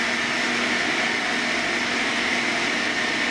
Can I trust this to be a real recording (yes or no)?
yes